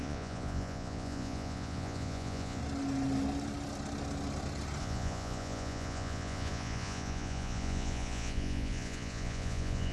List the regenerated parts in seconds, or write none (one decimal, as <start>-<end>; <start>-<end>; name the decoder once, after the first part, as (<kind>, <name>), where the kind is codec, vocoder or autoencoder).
0.0-2.6 (vocoder, Vocos); 4.8-9.9

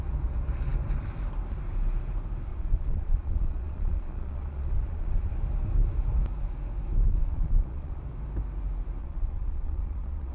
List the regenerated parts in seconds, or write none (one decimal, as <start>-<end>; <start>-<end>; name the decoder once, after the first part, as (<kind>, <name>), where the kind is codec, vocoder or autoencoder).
2.5-5.3 (vocoder, Vocos); 7.1-8.0; 9.0-10.3

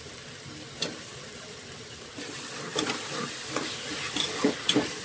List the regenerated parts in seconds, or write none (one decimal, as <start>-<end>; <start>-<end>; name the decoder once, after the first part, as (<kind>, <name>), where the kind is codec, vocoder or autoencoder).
none

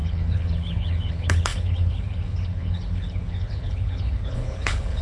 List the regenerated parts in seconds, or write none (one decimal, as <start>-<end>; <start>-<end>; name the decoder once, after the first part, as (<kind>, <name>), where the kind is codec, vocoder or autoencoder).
0.0-5.0 (codec, HILCodec)